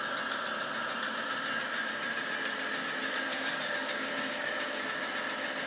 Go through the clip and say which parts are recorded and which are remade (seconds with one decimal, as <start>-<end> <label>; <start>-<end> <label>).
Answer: 0.0-3.3 recorded; 3.3-5.1 remade; 5.1-5.7 recorded